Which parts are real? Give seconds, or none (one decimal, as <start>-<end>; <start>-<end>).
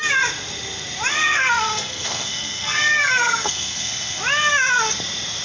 0.0-1.1; 4.2-5.4